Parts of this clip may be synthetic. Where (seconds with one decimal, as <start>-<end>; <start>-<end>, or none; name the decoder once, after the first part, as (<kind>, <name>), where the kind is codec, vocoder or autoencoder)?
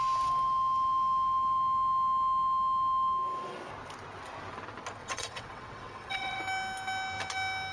5.0-6.4 (vocoder, WaveNeXt)